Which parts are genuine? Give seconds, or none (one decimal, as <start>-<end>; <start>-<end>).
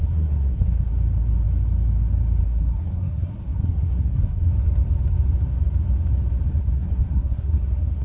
1.0-2.4; 4.5-6.6